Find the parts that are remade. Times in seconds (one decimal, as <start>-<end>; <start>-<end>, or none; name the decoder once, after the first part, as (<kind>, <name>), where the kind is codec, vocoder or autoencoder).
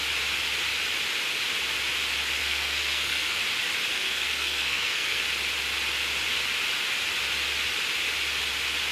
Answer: 2.4-3.4 (codec, SNAC); 3.9-5.2